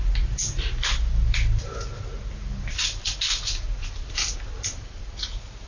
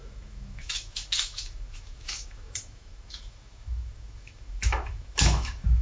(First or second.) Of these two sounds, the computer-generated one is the second